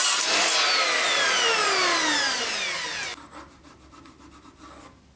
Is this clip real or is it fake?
real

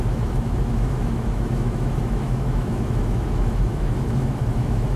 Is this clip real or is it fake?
fake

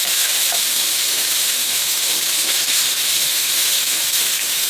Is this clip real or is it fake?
fake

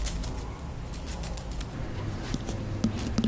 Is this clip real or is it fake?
real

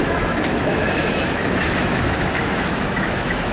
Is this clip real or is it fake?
fake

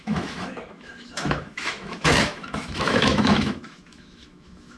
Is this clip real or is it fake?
fake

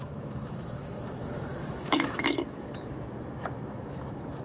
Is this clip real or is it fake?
fake